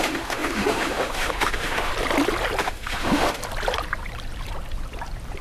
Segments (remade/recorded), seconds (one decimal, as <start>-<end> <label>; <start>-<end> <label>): 0.0-1.9 remade; 1.9-2.6 recorded; 2.6-3.4 remade; 3.4-5.4 recorded